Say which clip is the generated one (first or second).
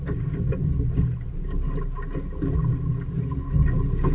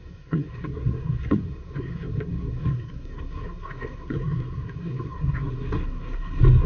second